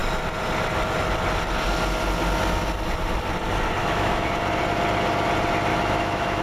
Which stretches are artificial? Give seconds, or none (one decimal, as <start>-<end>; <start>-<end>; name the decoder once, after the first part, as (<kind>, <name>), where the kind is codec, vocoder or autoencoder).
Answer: 3.8-4.3 (autoencoder, DAC-VAE); 5.7-6.4

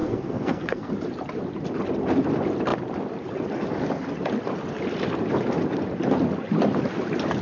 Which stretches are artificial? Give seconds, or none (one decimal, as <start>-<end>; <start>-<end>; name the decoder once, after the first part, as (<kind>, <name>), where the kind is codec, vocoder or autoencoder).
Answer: 0.0-0.9 (codec, SNAC)

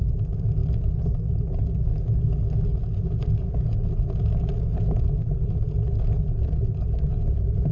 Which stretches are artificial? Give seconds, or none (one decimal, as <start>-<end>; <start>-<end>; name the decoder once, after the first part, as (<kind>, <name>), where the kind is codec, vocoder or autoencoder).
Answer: 1.9-2.4 (codec, DAC)

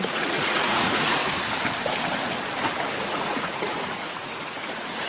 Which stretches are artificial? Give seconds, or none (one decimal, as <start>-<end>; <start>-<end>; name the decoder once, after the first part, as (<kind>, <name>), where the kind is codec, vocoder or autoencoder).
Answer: 0.0-1.2 (vocoder, Vocos); 3.0-5.1

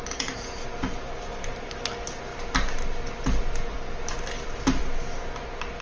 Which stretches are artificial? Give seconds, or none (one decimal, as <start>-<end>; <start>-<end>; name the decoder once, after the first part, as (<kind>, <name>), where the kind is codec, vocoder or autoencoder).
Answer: none